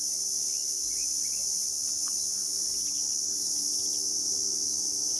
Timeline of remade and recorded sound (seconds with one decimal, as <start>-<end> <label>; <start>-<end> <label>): 0.0-5.2 recorded